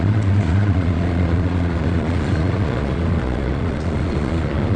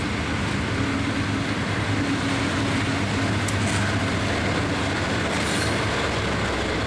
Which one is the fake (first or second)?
first